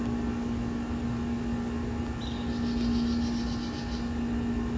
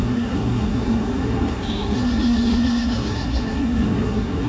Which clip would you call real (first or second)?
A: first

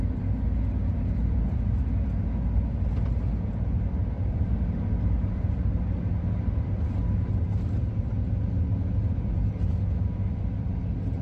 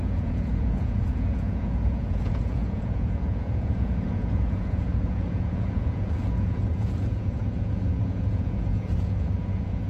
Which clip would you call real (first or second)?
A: first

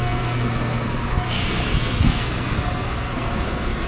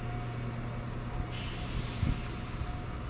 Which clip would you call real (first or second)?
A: second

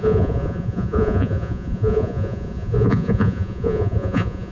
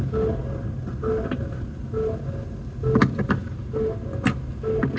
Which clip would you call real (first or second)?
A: second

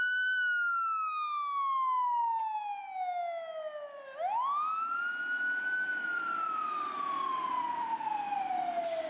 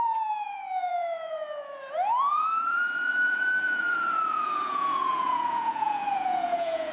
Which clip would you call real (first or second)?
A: first